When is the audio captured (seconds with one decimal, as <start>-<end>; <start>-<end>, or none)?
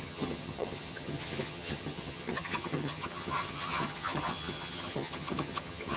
none